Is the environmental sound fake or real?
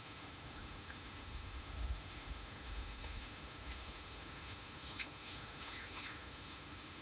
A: fake